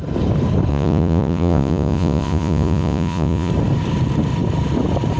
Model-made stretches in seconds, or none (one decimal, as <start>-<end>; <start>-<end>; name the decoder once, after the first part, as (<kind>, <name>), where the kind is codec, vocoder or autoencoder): 0.7-3.5 (vocoder, Vocos)

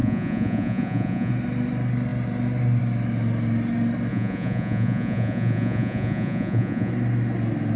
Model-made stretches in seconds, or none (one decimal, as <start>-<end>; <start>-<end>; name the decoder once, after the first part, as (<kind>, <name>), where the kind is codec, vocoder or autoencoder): 0.0-1.3 (vocoder, Vocos); 4.1-6.9

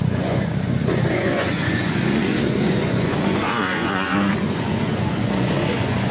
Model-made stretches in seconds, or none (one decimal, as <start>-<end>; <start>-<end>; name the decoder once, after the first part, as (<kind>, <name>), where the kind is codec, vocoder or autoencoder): 0.0-6.1 (vocoder, Vocos)

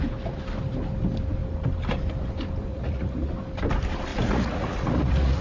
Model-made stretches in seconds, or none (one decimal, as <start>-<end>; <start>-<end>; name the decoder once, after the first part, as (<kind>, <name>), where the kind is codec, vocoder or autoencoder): 2.7-3.3 (vocoder, Vocos); 4.1-5.4